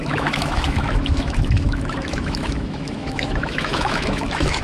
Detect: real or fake fake